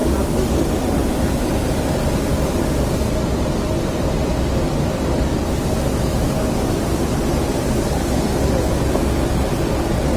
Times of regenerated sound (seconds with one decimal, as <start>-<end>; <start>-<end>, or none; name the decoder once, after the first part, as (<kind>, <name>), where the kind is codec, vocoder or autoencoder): none